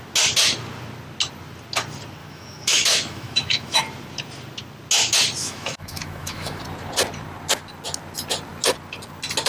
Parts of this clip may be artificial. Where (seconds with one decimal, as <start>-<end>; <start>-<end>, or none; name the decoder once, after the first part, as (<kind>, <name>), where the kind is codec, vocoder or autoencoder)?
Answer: 2.2-3.8 (autoencoder, DAC-VAE); 5.4-6.6